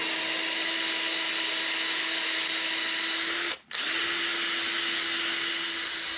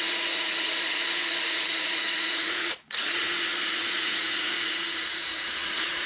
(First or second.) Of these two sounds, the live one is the first